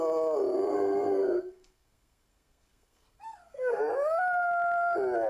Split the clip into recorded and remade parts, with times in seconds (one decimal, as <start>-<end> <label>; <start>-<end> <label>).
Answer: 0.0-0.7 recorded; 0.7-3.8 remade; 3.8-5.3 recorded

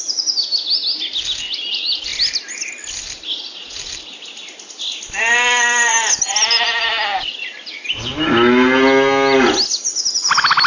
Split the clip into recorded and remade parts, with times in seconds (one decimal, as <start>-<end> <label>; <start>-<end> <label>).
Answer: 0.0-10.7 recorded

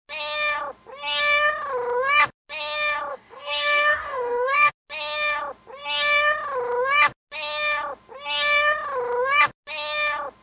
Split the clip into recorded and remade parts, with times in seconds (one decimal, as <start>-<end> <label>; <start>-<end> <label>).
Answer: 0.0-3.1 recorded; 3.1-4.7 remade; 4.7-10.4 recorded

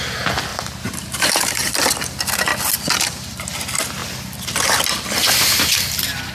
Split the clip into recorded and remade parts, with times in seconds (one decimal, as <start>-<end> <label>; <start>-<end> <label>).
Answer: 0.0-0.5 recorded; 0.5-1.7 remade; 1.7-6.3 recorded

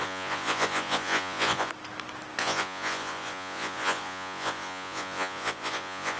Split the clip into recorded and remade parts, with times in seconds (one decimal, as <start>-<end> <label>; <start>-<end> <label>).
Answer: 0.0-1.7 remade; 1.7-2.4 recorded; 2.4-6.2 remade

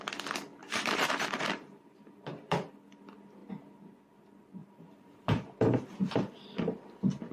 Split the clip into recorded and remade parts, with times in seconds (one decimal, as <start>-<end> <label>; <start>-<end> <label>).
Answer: 0.0-0.6 recorded; 0.6-2.4 remade; 2.4-4.6 recorded; 4.6-6.3 remade; 6.3-7.3 recorded